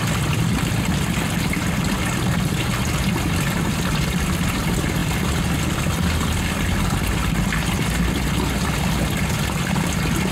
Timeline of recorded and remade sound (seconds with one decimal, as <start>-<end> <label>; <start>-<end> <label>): 0.0-10.3 recorded